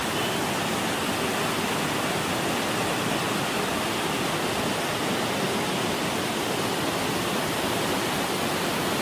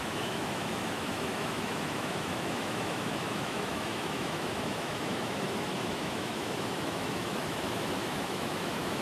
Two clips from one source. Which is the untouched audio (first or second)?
first